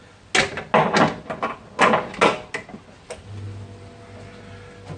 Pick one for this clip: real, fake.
real